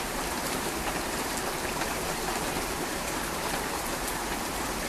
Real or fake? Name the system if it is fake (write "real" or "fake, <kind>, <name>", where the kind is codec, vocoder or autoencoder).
fake, vocoder, BigVGAN v2